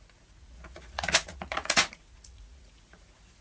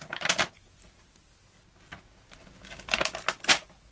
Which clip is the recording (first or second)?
second